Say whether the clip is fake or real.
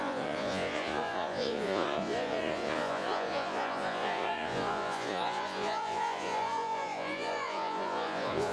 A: fake